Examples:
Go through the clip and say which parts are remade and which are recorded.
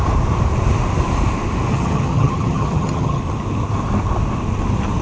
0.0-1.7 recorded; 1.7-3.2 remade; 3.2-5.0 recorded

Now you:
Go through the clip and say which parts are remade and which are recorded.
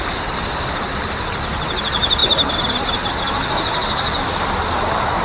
0.0-5.2 recorded